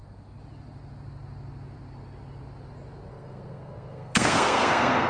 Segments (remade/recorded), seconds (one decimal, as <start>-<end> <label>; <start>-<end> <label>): 0.0-3.1 recorded; 3.1-5.1 remade